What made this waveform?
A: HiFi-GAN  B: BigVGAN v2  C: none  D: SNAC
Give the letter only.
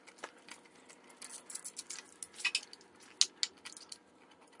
C